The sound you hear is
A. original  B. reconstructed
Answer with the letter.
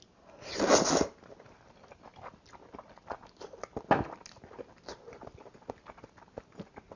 A